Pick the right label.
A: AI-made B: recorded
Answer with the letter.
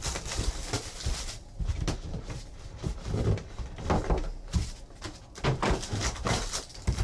B